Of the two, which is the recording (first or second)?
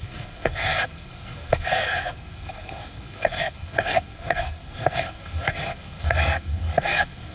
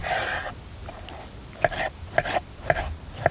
second